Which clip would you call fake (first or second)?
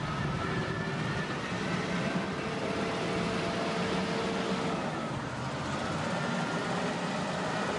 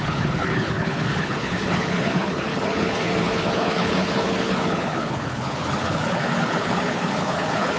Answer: second